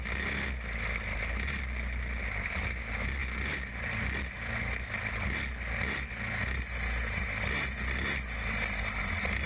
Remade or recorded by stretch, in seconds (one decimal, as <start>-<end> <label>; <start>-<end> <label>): 0.0-9.5 recorded